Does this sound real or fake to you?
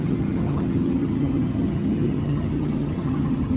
fake